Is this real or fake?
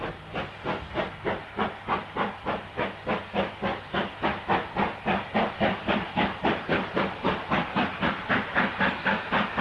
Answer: real